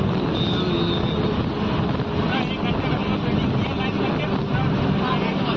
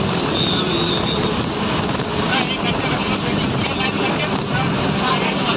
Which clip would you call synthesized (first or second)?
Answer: second